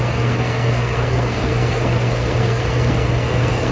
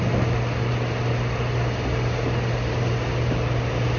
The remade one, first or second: first